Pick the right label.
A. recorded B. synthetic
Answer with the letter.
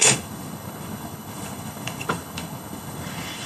B